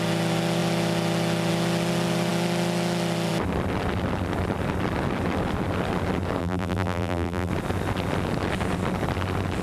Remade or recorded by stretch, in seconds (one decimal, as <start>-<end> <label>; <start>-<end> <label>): 0.0-6.4 recorded; 6.4-7.5 remade; 7.5-9.6 recorded